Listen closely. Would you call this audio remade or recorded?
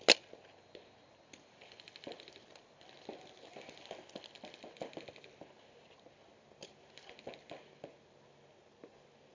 recorded